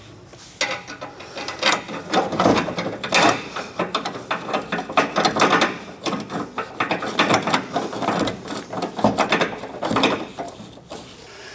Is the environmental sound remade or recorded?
recorded